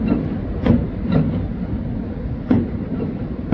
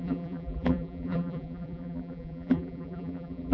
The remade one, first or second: second